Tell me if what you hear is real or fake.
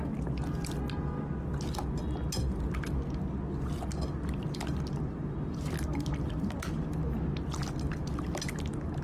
real